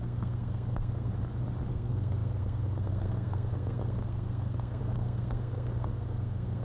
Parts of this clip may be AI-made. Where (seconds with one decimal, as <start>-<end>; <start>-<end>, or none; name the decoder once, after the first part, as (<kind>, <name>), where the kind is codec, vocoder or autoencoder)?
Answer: 0.0-1.1 (codec, SNAC); 1.7-6.6